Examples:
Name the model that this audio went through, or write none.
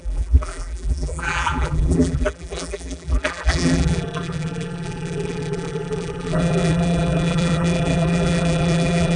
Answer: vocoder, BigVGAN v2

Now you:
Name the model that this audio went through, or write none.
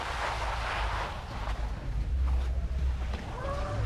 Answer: none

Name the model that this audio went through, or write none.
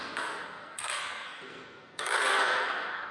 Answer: codec, SNAC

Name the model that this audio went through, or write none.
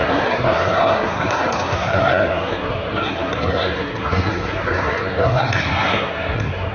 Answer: codec, SNAC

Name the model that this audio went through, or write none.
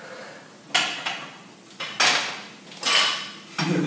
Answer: none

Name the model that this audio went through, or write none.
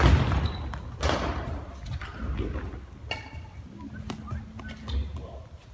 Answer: none